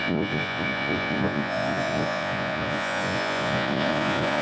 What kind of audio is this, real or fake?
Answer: fake